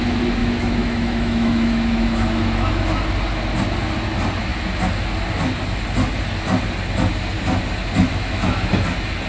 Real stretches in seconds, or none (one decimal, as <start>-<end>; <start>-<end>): 0.0-0.4; 2.7-8.1; 8.7-9.3